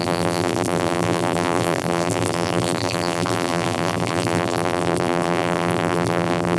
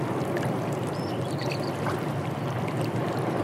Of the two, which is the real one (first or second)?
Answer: second